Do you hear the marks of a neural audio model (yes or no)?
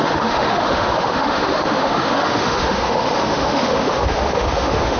yes